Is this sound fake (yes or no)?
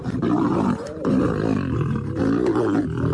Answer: no